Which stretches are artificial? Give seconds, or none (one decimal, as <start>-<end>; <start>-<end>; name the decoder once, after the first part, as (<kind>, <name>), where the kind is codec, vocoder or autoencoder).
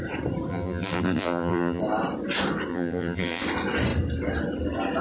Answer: 0.5-1.8 (vocoder, BigVGAN v2); 2.7-3.4